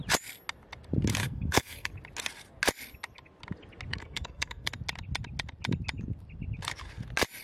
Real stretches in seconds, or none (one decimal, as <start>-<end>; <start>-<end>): 0.0-1.2; 1.9-3.9; 4.7-7.4